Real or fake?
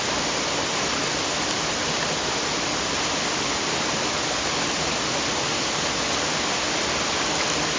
real